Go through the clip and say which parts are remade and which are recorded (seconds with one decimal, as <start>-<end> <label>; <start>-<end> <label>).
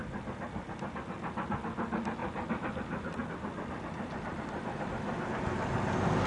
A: 0.0-0.7 remade; 0.7-2.2 recorded; 2.2-3.3 remade; 3.3-6.3 recorded